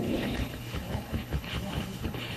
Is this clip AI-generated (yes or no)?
yes